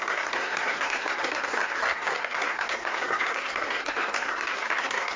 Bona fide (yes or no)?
no